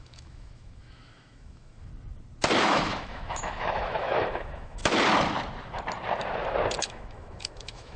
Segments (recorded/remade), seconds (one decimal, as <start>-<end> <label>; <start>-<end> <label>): 0.0-1.9 remade; 1.9-2.6 recorded; 2.6-4.8 remade; 4.8-6.8 recorded; 6.8-8.0 remade